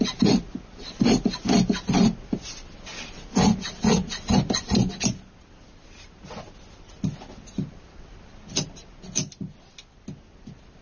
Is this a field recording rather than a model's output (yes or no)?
yes